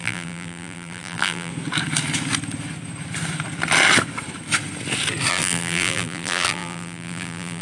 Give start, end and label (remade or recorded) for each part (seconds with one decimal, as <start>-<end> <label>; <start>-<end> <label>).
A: 0.0-1.5 remade; 1.5-5.3 recorded; 5.3-7.6 remade